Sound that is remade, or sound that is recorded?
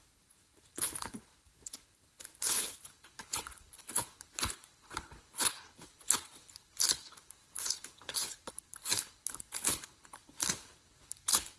remade